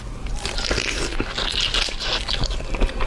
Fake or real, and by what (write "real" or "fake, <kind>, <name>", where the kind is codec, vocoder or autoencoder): real